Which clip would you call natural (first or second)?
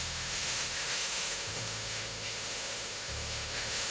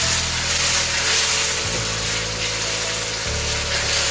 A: second